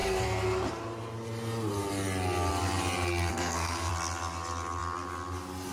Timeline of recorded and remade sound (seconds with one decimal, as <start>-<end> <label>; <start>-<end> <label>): 0.0-3.3 recorded; 3.3-3.9 remade; 3.9-5.7 recorded

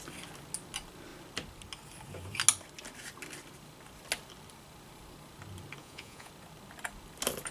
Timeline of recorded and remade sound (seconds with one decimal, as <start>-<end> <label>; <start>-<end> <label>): 0.0-5.8 recorded; 5.8-6.3 remade; 6.3-7.5 recorded

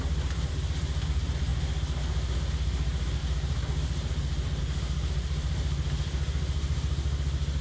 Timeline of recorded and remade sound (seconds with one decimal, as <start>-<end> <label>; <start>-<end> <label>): 0.0-7.6 recorded

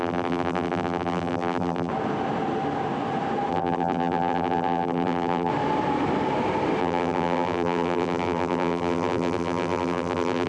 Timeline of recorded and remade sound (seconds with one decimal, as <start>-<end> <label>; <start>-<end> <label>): 0.0-1.9 remade; 1.9-3.5 recorded; 3.5-5.5 remade; 5.5-6.8 recorded; 6.8-10.5 remade

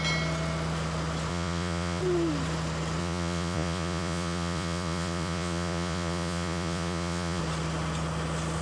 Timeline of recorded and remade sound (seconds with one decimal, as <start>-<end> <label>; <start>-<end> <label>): 0.0-1.3 recorded; 1.3-2.0 remade; 2.0-3.0 recorded; 3.0-7.4 remade; 7.4-8.6 recorded

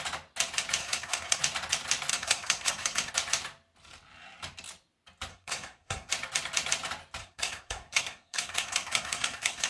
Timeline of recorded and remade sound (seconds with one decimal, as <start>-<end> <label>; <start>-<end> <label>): 0.0-0.8 recorded; 0.8-1.4 remade; 1.4-2.1 recorded; 2.1-3.1 remade; 3.1-5.3 recorded; 5.3-6.1 remade; 6.1-7.2 recorded; 7.2-9.7 remade

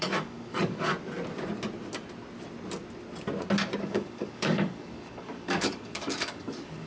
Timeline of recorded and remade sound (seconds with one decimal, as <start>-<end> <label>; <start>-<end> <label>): 0.0-0.9 remade; 0.9-3.8 recorded; 3.8-6.9 remade